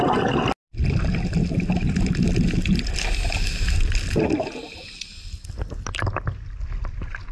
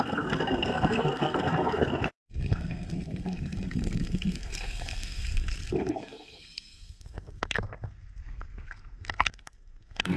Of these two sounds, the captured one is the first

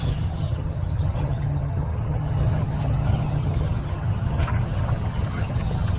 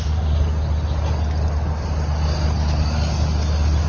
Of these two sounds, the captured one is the second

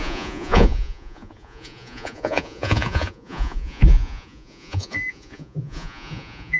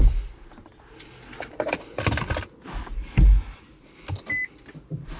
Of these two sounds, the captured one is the second